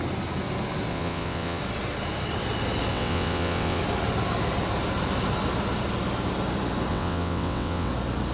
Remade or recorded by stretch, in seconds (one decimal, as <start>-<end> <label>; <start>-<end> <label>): 0.0-0.9 recorded; 0.9-1.6 remade; 1.6-2.9 recorded; 2.9-3.8 remade; 3.8-6.9 recorded; 6.9-7.9 remade; 7.9-8.3 recorded